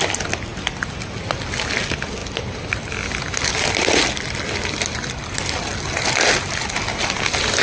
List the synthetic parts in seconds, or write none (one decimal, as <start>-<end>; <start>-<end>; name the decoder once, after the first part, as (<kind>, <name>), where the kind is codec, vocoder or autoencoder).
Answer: 2.2-6.1 (vocoder, BigVGAN v2)